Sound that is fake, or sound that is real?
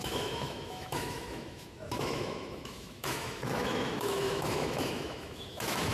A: fake